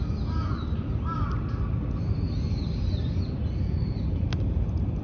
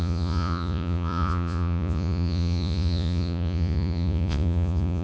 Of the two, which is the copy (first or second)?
second